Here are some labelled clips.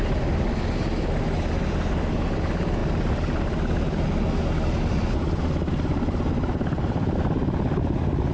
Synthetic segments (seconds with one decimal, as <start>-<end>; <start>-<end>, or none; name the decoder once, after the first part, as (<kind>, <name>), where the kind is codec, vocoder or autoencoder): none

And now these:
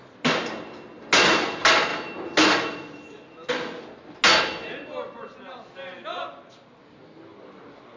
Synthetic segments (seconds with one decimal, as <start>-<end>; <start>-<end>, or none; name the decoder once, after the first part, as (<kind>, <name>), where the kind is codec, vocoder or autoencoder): none

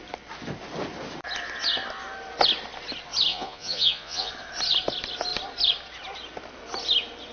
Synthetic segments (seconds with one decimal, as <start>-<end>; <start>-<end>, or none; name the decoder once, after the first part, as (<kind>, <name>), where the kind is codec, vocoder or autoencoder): 3.3-4.3 (vocoder, Vocos)